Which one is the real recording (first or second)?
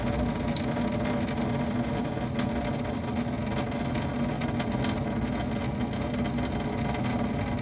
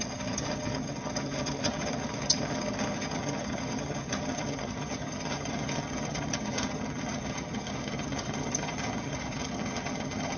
first